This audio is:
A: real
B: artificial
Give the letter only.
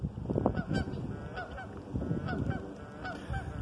A